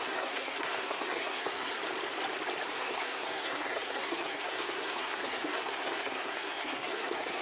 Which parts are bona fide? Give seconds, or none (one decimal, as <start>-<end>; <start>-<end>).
1.8-2.8